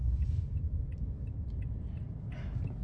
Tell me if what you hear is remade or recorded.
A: recorded